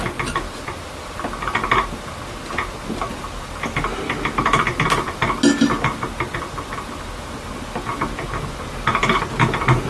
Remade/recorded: recorded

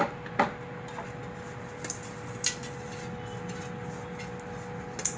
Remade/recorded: recorded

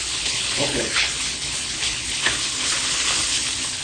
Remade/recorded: remade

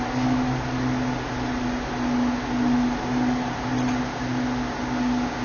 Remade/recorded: recorded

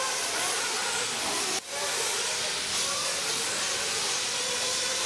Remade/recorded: recorded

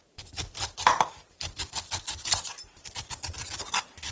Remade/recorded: recorded